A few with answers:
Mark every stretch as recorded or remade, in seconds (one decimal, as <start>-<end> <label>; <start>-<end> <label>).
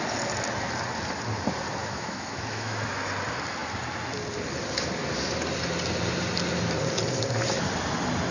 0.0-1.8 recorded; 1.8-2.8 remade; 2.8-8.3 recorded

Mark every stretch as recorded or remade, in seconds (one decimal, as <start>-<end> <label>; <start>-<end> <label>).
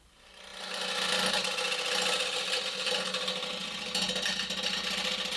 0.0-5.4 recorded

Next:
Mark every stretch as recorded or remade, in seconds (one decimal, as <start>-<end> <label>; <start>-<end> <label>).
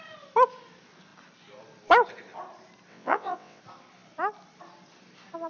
0.0-2.9 recorded; 2.9-3.6 remade; 3.6-5.5 recorded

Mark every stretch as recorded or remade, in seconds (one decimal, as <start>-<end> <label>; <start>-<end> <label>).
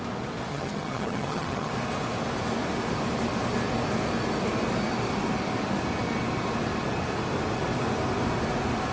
0.0-0.5 recorded; 0.5-1.7 remade; 1.7-8.9 recorded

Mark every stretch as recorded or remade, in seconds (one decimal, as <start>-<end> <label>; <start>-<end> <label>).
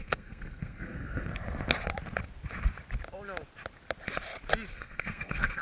0.0-1.3 remade; 1.3-4.7 recorded; 4.7-5.6 remade